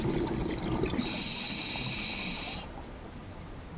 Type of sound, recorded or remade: recorded